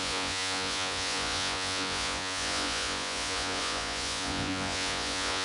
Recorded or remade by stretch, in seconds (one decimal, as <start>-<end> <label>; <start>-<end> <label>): 0.0-5.4 remade